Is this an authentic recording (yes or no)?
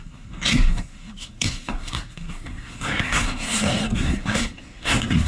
no